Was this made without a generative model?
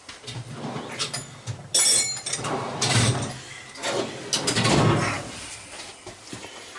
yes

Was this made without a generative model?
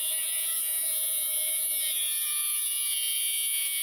no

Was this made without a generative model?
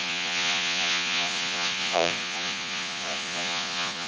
no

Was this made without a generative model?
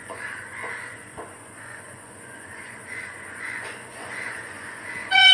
no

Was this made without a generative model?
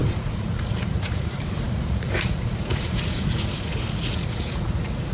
no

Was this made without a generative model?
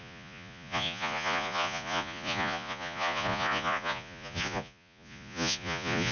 no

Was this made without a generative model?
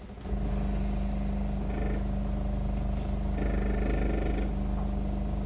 yes